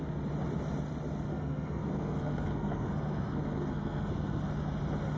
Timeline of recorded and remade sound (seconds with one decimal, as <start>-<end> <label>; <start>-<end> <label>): 0.0-1.3 recorded; 1.3-4.4 remade; 4.4-5.2 recorded